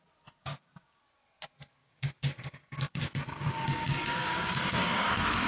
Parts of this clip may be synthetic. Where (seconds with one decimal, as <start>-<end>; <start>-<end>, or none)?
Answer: 0.4-1.0; 1.8-5.1